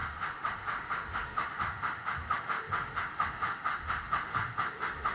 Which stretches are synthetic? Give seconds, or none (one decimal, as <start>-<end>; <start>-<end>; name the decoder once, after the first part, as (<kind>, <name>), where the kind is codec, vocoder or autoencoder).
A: 0.0-5.1 (autoencoder, DAC-VAE)